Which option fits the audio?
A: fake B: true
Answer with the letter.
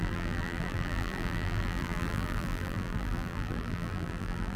A